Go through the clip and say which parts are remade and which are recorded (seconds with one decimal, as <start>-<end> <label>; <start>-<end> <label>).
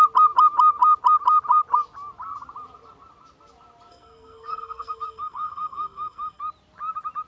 0.0-3.9 recorded; 3.9-6.4 remade; 6.4-7.3 recorded